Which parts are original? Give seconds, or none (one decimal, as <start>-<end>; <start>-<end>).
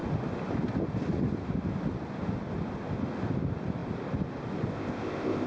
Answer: 0.0-4.7